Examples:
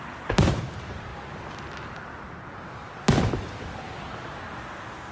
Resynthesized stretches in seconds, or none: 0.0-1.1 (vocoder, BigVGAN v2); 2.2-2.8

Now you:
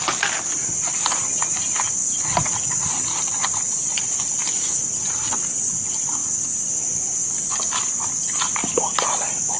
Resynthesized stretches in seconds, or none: 0.0-2.0 (vocoder, BigVGAN v2); 3.8-6.2; 6.8-9.6

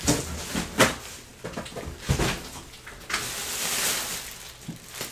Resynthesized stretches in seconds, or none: none

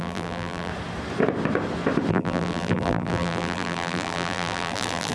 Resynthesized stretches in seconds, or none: 0.0-0.7 (vocoder, BigVGAN v2); 2.1-5.1

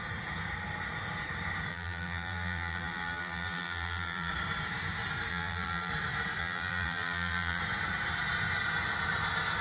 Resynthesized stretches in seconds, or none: 1.7-4.3 (vocoder, BigVGAN v2); 5.3-5.9; 6.4-7.6

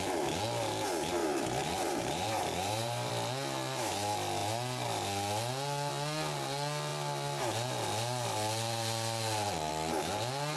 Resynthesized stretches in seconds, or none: 1.2-3.1 (vocoder, BigVGAN v2)